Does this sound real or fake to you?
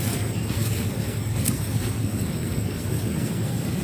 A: fake